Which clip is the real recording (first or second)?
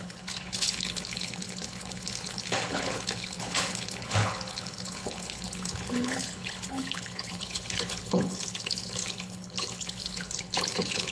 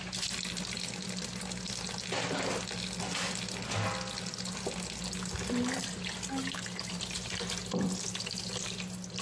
second